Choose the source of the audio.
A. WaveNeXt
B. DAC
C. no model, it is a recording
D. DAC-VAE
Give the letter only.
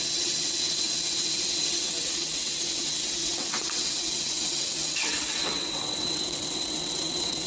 A